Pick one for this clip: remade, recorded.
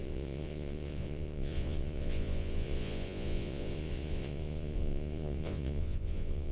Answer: remade